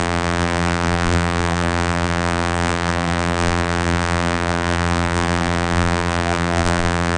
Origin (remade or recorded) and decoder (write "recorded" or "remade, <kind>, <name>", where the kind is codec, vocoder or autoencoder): remade, vocoder, BigVGAN v2